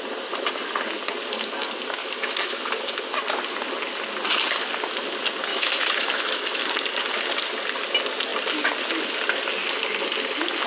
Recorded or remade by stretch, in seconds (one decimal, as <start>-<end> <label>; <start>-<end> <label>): 0.0-2.0 recorded; 2.0-2.6 remade; 2.6-5.5 recorded; 5.5-6.7 remade; 6.7-10.7 recorded